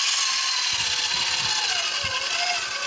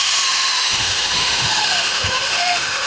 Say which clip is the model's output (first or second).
second